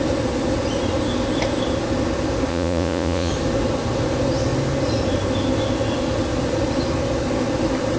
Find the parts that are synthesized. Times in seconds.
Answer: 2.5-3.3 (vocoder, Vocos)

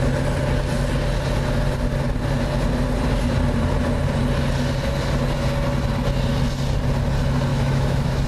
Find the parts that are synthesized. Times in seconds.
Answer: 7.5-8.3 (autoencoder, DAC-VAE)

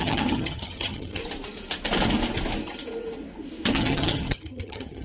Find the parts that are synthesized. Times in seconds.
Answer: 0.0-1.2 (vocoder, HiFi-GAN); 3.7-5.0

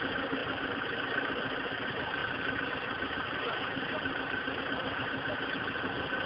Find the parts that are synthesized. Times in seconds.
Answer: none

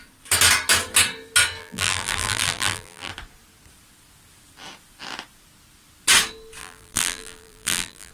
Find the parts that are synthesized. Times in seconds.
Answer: 1.6-3.1 (vocoder, BigVGAN v2); 6.6-8.1

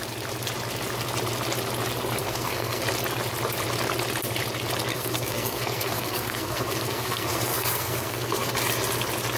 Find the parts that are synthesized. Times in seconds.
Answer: 2.2-2.8 (codec, SNAC); 4.9-8.5

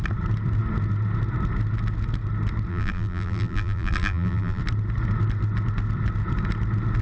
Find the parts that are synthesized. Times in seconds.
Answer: 2.7-4.6 (vocoder, BigVGAN v2)

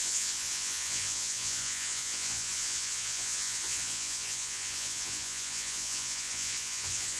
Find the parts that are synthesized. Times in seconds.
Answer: 0.0-7.2 (vocoder, Vocos)